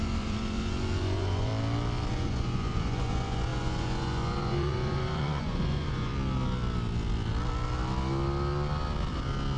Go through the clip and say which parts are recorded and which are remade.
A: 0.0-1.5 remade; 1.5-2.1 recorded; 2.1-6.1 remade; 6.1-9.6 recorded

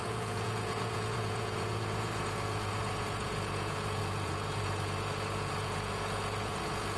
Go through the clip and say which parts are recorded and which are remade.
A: 0.0-7.0 remade

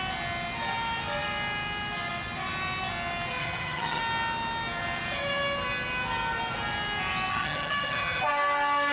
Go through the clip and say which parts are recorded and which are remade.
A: 0.0-3.4 recorded; 3.4-4.0 remade; 4.0-7.3 recorded; 7.3-8.2 remade; 8.2-8.9 recorded

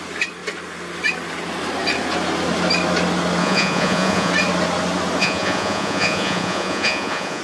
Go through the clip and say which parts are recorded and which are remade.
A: 0.0-3.4 recorded; 3.4-4.3 remade; 4.3-5.2 recorded; 5.2-7.4 remade

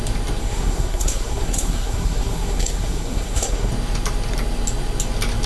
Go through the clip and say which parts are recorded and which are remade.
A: 0.0-0.4 recorded; 0.4-3.7 remade; 3.7-5.5 recorded

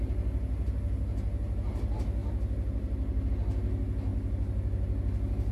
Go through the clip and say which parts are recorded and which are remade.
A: 0.0-5.5 recorded